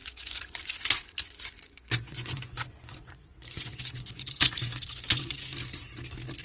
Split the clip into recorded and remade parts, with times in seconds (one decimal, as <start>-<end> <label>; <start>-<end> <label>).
0.0-5.5 remade; 5.5-6.4 recorded

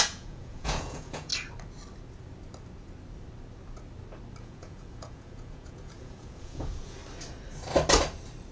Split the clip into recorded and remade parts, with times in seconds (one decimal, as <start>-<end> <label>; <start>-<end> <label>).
0.0-1.3 remade; 1.3-4.4 recorded; 4.4-7.0 remade; 7.0-8.5 recorded

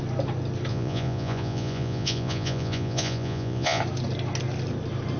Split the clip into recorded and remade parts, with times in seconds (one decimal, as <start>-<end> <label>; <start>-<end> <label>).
0.0-0.7 recorded; 0.7-3.8 remade; 3.8-5.2 recorded

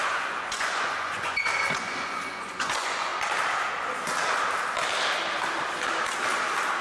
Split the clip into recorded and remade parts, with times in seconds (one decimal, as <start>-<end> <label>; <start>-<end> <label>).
0.0-3.1 remade; 3.1-6.8 recorded

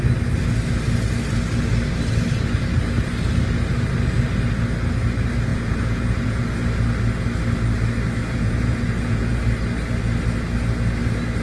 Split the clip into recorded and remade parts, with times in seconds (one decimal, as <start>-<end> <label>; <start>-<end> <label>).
0.0-5.5 recorded; 5.5-6.4 remade; 6.4-8.2 recorded; 8.2-9.4 remade; 9.4-11.4 recorded